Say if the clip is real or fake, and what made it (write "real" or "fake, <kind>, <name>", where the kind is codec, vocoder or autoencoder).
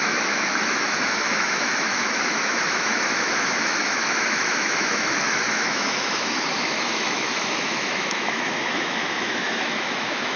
fake, autoencoder, DAC-VAE